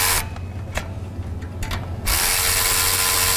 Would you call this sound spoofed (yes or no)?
no